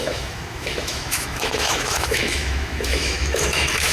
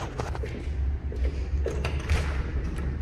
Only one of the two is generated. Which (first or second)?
first